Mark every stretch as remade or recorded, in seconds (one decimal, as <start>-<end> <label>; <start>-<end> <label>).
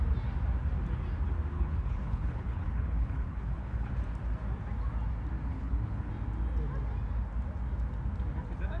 0.0-1.5 recorded; 1.5-3.9 remade; 3.9-5.5 recorded; 5.5-6.1 remade; 6.1-8.8 recorded